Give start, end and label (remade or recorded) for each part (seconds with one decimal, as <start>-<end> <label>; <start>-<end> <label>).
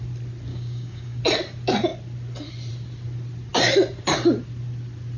0.0-0.5 recorded; 0.5-1.2 remade; 1.2-5.2 recorded